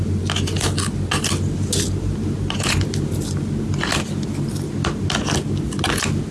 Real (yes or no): yes